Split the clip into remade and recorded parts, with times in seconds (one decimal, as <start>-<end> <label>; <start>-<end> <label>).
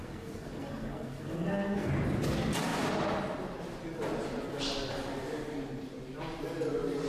0.0-1.9 remade; 1.9-7.1 recorded